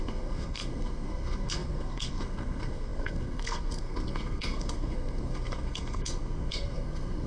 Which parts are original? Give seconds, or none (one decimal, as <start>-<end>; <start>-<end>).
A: none